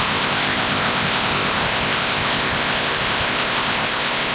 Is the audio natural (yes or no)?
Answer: no